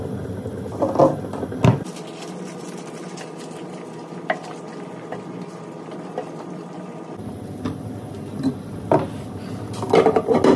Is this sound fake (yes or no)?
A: no